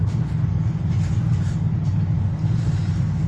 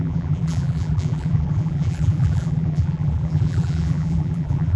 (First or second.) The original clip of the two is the first